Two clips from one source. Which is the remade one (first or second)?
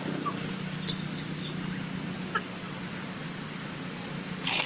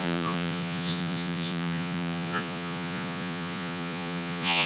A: second